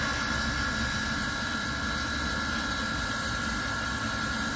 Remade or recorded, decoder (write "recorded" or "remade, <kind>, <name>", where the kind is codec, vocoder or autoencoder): recorded